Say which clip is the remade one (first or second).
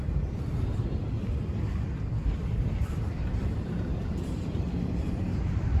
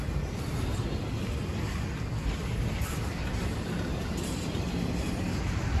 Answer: first